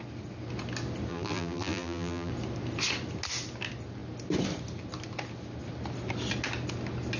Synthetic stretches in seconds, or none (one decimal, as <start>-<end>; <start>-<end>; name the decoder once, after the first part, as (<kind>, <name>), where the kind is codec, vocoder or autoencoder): 1.1-2.3 (vocoder, BigVGAN v2)